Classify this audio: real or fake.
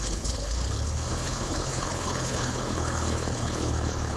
fake